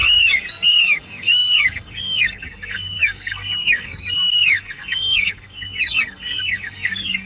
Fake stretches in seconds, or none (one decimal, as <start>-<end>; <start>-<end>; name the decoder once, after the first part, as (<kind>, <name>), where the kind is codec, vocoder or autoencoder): 0.0-7.3 (codec, SNAC)